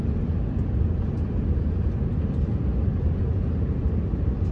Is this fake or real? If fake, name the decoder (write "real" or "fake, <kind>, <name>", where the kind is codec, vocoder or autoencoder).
real